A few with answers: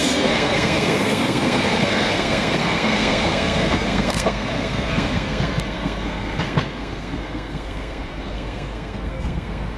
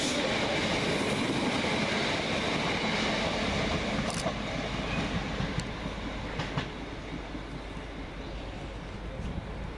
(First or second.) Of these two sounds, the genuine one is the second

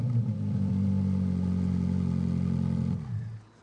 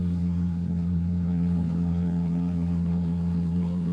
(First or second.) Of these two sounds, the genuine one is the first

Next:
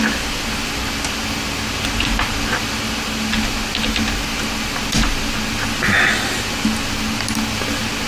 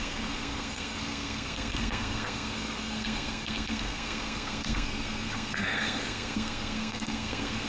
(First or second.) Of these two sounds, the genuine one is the first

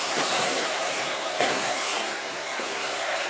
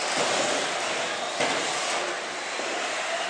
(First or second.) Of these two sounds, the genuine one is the second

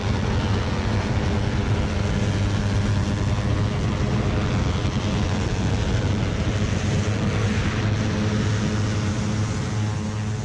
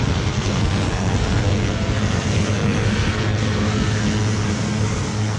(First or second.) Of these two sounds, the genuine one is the first